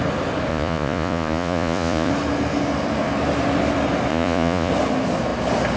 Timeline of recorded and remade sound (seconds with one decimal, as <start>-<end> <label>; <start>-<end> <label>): 0.0-0.5 recorded; 0.5-2.1 remade; 2.1-4.1 recorded; 4.1-4.7 remade; 4.7-5.8 recorded